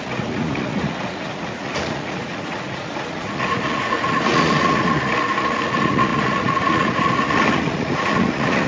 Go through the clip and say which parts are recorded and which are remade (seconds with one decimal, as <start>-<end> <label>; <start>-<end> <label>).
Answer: 0.0-8.7 remade